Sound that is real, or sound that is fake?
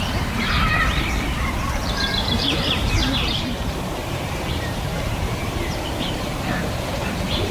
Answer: fake